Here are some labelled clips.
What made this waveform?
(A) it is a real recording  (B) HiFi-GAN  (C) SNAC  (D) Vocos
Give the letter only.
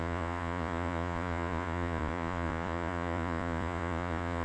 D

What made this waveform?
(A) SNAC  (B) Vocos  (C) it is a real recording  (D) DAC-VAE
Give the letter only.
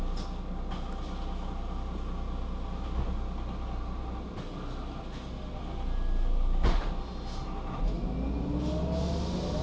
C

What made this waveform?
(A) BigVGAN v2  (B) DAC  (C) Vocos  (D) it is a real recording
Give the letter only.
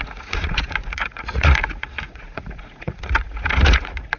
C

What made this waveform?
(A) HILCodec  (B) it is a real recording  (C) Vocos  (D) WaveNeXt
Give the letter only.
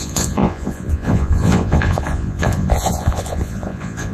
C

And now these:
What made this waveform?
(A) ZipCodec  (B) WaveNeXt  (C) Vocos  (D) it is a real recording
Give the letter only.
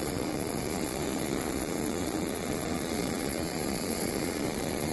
C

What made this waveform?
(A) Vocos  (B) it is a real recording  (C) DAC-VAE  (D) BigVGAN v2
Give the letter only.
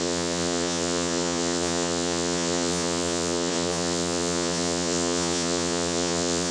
A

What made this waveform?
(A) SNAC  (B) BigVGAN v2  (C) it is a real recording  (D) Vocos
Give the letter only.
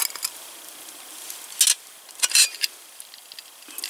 C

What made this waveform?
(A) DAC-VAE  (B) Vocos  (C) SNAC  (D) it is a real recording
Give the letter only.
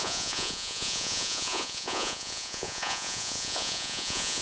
B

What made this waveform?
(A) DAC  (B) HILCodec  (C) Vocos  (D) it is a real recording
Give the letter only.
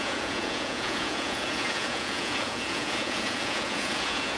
C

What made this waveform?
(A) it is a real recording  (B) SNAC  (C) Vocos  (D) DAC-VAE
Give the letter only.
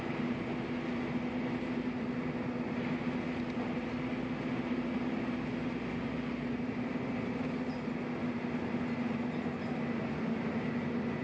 A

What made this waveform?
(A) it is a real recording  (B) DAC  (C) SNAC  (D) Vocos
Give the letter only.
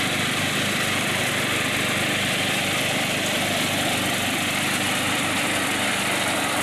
A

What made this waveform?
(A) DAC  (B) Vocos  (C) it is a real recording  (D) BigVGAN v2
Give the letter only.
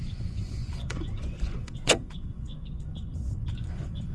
B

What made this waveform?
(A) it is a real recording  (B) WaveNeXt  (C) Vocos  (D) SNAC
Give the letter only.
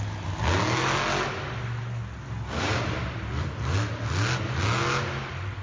A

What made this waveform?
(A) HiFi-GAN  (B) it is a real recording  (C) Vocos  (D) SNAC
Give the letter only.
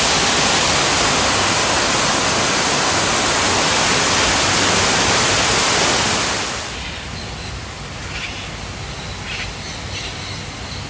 B